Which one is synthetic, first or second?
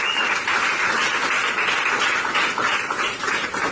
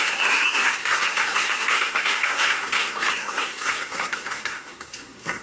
second